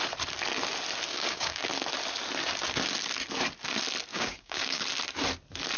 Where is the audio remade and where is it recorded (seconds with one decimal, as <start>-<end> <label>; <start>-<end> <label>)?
0.0-1.1 recorded; 1.1-1.6 remade; 1.6-4.1 recorded; 4.1-4.8 remade; 4.8-5.8 recorded